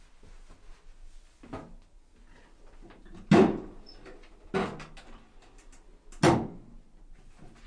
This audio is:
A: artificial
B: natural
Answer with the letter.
B